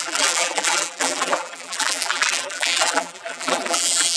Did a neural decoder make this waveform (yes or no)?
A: yes